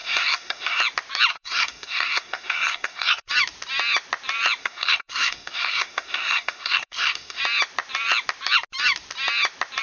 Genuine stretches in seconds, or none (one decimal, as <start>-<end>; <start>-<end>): 0.8-1.3; 3.3-4.6; 7.4-9.8